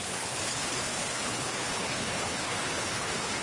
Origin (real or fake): fake